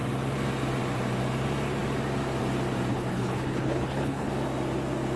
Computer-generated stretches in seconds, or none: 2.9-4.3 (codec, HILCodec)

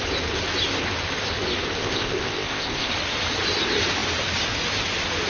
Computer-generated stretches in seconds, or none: 1.8-2.9 (codec, ZipCodec)

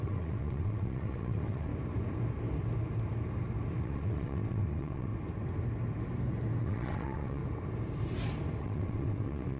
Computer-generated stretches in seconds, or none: 0.0-1.7 (vocoder, WaveNeXt); 3.8-5.1; 6.6-7.4; 8.6-9.6